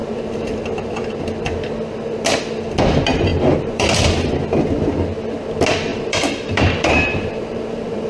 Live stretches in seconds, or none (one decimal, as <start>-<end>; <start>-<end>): 1.1-3.3; 4.3-5.9